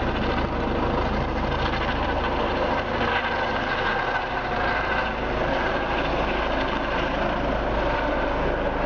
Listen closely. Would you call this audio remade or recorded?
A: recorded